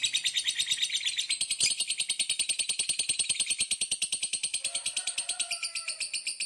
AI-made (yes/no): no